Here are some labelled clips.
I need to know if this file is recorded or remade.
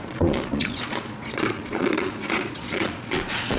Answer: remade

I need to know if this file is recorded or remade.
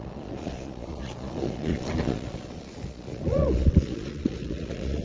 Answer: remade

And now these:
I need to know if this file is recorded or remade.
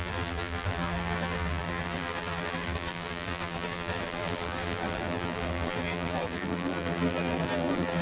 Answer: remade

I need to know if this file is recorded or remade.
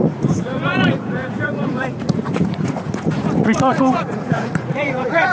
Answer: remade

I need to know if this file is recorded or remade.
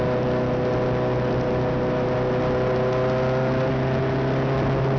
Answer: recorded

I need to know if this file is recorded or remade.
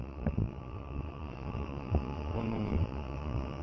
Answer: remade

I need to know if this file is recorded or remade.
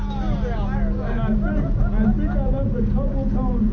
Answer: recorded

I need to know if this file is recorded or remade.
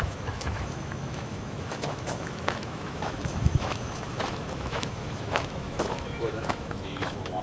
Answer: remade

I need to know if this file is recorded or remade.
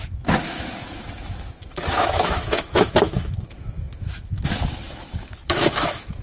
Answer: remade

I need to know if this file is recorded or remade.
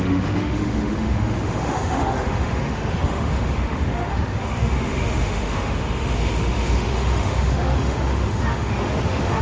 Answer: remade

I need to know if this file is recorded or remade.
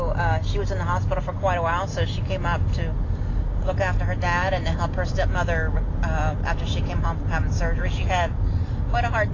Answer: recorded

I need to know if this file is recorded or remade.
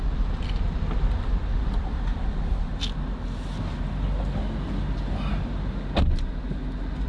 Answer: recorded